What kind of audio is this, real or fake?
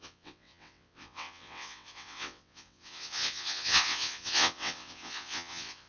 fake